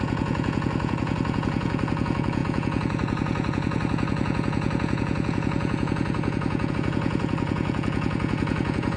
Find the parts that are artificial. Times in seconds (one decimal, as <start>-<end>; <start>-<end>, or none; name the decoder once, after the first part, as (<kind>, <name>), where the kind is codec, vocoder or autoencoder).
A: 0.0-9.0 (vocoder, Vocos)